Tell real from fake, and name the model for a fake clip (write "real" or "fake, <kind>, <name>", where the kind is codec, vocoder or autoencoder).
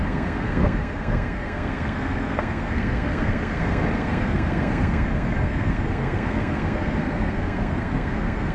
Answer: fake, codec, SNAC